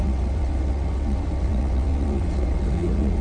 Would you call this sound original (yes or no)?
no